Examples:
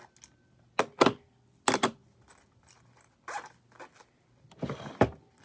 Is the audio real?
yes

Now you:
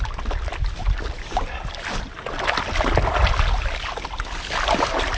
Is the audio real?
yes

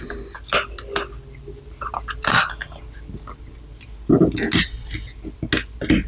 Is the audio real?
yes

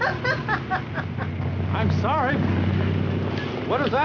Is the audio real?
yes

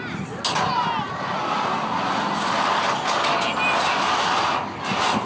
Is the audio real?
yes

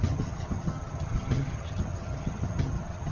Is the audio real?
no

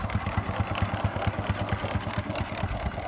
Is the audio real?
yes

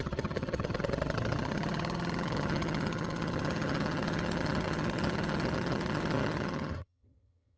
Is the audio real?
no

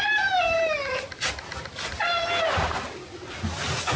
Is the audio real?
yes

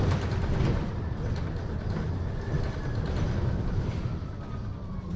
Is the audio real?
yes